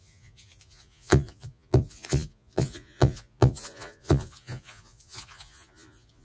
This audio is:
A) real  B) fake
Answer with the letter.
B